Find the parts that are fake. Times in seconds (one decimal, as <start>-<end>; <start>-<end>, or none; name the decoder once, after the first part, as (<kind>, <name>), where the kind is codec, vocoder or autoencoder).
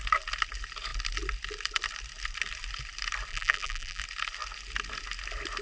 3.3-4.0 (vocoder, BigVGAN v2)